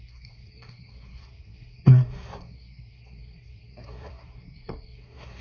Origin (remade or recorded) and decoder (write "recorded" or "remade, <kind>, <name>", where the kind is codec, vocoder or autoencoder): remade, codec, SNAC